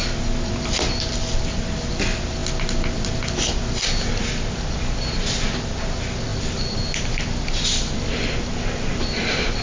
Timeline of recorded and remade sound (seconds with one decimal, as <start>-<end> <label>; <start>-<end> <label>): 0.0-9.6 recorded